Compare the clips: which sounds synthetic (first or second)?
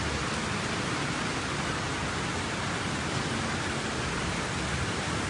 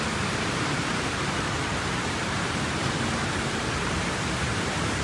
second